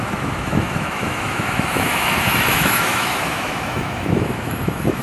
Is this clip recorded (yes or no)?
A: no